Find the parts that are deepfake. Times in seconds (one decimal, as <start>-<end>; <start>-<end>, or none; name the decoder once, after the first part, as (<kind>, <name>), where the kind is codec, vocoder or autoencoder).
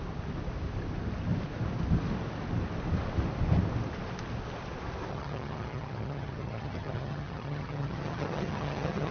5.1-9.1 (vocoder, HiFi-GAN)